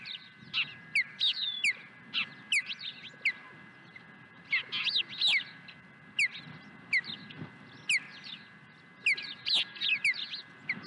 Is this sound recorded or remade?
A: recorded